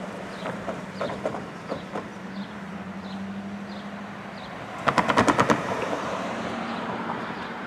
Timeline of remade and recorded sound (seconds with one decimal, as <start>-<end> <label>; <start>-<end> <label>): 0.0-2.1 remade; 2.1-6.3 recorded; 6.3-7.7 remade